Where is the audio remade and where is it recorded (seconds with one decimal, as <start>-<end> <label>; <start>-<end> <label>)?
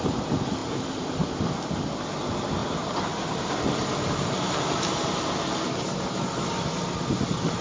0.0-0.6 recorded; 0.6-1.7 remade; 1.7-2.6 recorded; 2.6-3.6 remade; 3.6-7.6 recorded